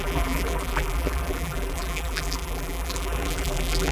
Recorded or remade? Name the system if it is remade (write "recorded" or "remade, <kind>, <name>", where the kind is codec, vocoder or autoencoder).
remade, vocoder, BigVGAN v2